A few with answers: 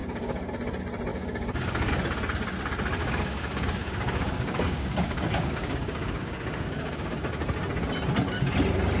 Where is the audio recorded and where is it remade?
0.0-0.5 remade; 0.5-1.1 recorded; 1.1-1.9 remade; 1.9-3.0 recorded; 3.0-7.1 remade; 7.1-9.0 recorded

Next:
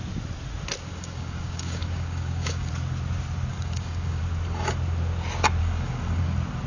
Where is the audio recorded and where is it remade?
0.0-0.9 recorded; 0.9-2.7 remade; 2.7-3.5 recorded; 3.5-4.2 remade; 4.2-5.6 recorded; 5.6-6.2 remade; 6.2-6.7 recorded

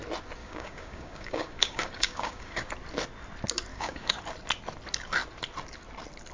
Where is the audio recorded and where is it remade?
0.0-0.4 recorded; 0.4-2.7 remade; 2.7-3.7 recorded; 3.7-4.2 remade; 4.2-6.3 recorded

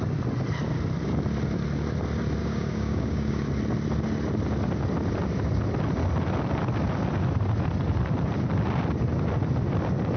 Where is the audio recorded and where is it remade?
0.0-2.4 recorded; 2.4-3.5 remade; 3.5-10.2 recorded

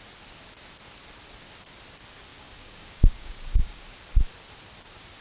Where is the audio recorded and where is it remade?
0.0-2.3 recorded; 2.3-3.8 remade; 3.8-5.2 recorded

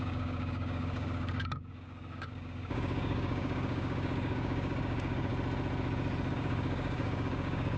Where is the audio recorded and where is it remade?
0.0-5.3 remade; 5.3-6.3 recorded; 6.3-7.8 remade

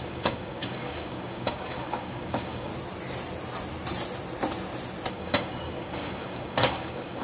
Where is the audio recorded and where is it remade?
0.0-2.7 remade; 2.7-5.1 recorded; 5.1-7.2 remade

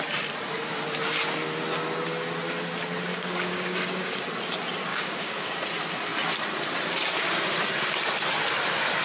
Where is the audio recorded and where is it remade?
0.0-3.1 recorded; 3.1-4.2 remade; 4.2-4.9 recorded; 4.9-5.5 remade; 5.5-9.0 recorded